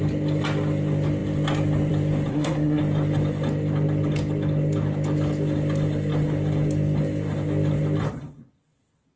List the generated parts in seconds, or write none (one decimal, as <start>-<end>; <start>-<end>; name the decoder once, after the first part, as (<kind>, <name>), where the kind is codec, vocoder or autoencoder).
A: 2.3-2.8 (codec, SNAC)